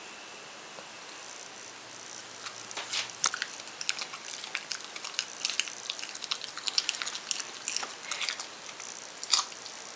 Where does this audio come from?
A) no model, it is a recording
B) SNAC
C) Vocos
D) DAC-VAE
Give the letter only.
A